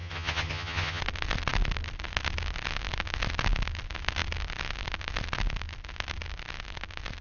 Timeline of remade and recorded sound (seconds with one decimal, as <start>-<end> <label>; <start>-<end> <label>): 0.0-1.0 remade; 1.0-7.2 recorded